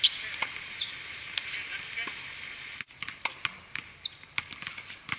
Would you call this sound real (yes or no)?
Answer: yes